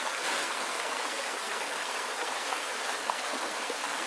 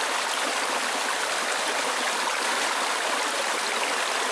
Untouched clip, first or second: second